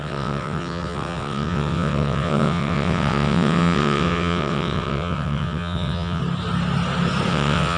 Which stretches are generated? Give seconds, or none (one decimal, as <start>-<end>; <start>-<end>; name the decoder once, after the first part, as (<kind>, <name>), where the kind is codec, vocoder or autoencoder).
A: 0.0-6.2 (vocoder, WaveNeXt); 7.3-7.8